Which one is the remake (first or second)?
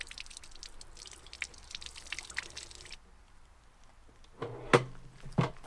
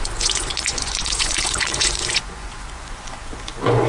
second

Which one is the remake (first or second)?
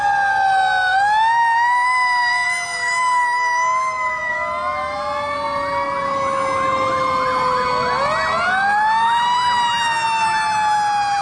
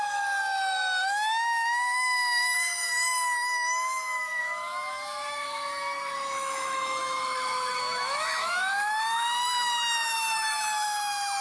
second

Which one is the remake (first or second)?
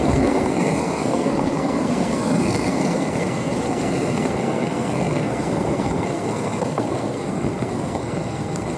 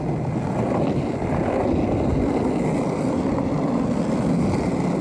first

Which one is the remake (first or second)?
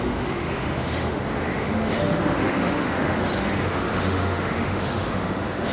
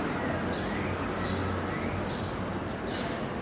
first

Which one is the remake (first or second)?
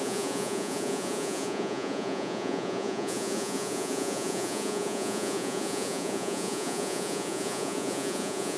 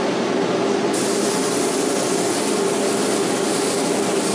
first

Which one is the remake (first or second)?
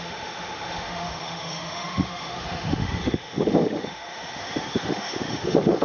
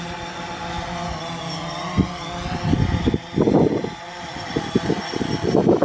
first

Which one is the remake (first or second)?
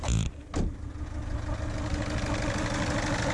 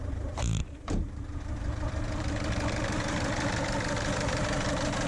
second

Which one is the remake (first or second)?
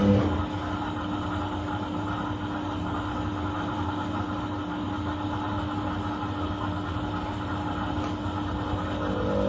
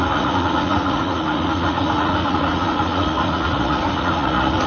second